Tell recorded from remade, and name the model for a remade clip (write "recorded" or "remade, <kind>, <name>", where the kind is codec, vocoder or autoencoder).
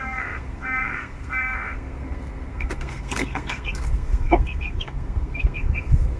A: remade, codec, SNAC